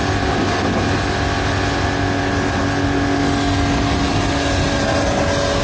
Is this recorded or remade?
recorded